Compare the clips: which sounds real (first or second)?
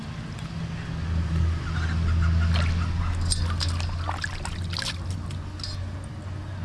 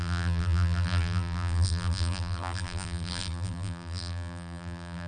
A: first